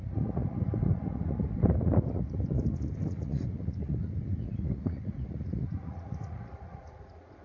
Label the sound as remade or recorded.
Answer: remade